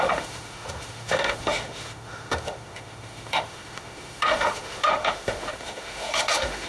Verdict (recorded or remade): remade